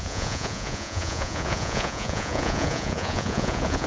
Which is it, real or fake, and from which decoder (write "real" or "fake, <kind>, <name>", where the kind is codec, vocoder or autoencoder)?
fake, vocoder, Vocos